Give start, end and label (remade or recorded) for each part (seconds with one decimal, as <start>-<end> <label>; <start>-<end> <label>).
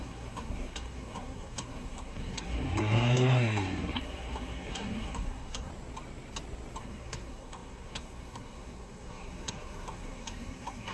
0.0-5.7 remade; 5.7-6.8 recorded; 6.8-10.9 remade